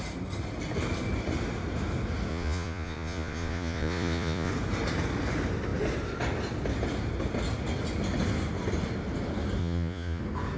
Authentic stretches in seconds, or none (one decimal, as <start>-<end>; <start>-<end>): 0.0-2.3; 4.5-9.6; 10.2-10.6